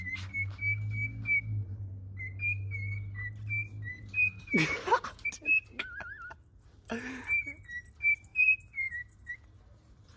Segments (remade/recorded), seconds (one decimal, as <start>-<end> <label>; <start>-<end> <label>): 0.0-3.9 recorded; 3.9-7.2 remade; 7.2-8.3 recorded; 8.3-9.3 remade; 9.3-10.2 recorded